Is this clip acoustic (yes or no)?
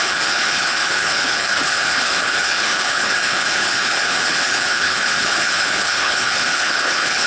no